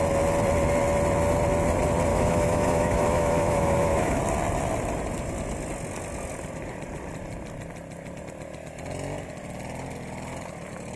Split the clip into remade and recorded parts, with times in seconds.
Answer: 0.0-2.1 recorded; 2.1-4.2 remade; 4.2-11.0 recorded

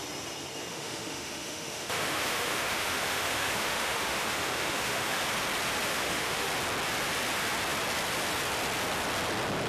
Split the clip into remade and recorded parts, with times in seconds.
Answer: 0.0-0.7 recorded; 0.7-5.2 remade; 5.2-5.9 recorded; 5.9-6.5 remade; 6.5-9.7 recorded

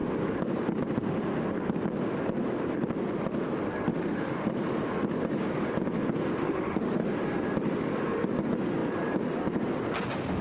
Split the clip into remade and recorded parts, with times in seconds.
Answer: 0.0-3.9 recorded; 3.9-4.5 remade; 4.5-6.4 recorded; 6.4-7.1 remade; 7.1-10.4 recorded

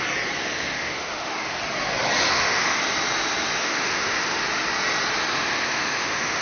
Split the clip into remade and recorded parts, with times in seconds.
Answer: 0.0-0.4 recorded; 0.4-1.6 remade; 1.6-2.3 recorded; 2.3-2.8 remade; 2.8-3.6 recorded; 3.6-4.4 remade; 4.4-5.3 recorded; 5.3-6.4 remade

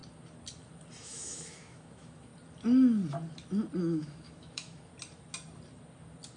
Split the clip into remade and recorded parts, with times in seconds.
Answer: 0.0-1.0 recorded; 1.0-2.3 remade; 2.3-3.8 recorded; 3.8-4.9 remade; 4.9-6.4 recorded

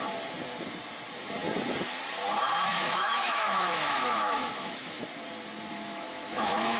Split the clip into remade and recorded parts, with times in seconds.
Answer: 0.0-2.7 recorded; 2.7-5.0 remade; 5.0-5.7 recorded; 5.7-6.8 remade

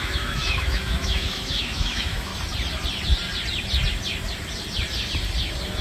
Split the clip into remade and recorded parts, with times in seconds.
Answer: 0.0-2.3 remade; 2.3-5.8 recorded